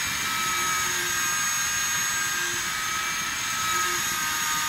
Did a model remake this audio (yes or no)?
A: no